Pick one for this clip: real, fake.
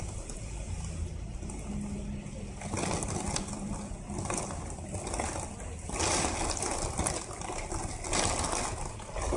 real